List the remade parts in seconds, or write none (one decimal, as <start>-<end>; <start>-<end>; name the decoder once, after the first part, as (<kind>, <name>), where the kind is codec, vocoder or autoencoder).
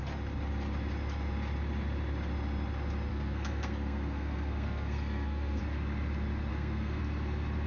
3.1-5.6 (codec, SNAC); 6.5-7.0